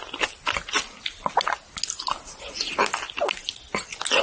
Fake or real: real